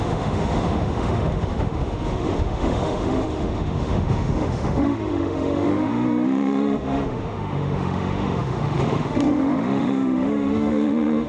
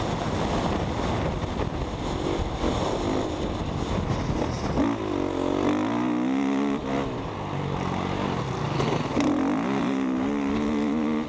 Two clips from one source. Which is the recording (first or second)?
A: second